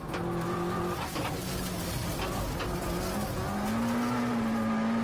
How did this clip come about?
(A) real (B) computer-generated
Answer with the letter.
A